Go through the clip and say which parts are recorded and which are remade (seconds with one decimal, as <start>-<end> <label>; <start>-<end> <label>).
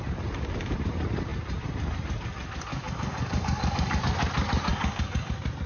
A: 0.0-2.7 recorded; 2.7-4.0 remade; 4.0-4.7 recorded; 4.7-5.3 remade; 5.3-5.7 recorded